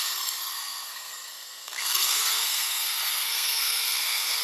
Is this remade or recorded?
remade